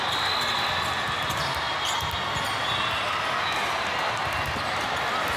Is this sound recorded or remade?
recorded